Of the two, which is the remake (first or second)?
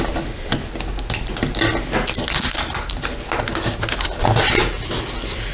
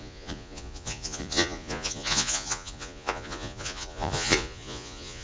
second